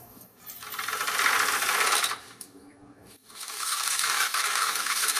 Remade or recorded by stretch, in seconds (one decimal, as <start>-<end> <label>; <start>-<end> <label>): 0.0-0.4 remade; 0.4-2.2 recorded; 2.2-5.2 remade